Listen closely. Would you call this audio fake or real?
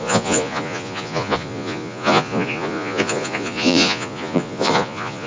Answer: fake